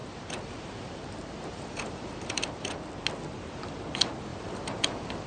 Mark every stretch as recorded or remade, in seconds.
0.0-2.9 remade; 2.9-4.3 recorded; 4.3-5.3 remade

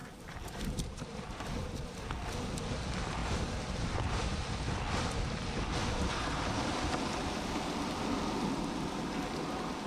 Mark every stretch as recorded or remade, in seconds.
0.0-2.0 remade; 2.0-3.2 recorded; 3.2-4.3 remade; 4.3-5.8 recorded; 5.8-6.8 remade; 6.8-9.9 recorded

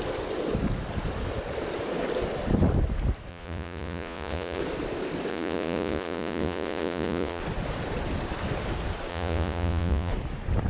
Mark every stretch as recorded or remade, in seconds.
0.0-3.3 recorded; 3.3-4.6 remade; 4.6-5.3 recorded; 5.3-7.4 remade; 7.4-9.1 recorded; 9.1-10.1 remade; 10.1-10.7 recorded

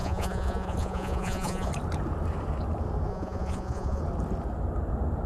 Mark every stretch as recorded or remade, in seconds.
0.0-1.7 remade; 1.7-3.1 recorded; 3.1-4.0 remade; 4.0-5.3 recorded